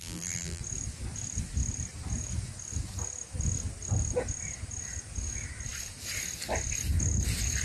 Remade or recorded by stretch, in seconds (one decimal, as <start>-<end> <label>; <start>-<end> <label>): 0.0-0.6 remade; 0.6-7.6 recorded